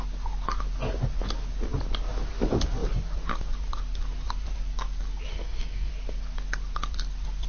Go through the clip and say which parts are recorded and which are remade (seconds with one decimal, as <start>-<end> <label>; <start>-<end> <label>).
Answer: 0.0-5.3 recorded; 5.3-5.9 remade; 5.9-7.5 recorded